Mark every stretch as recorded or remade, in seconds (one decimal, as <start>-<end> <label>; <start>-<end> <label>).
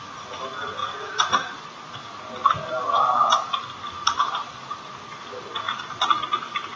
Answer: 0.0-0.8 recorded; 0.8-1.6 remade; 1.6-6.8 recorded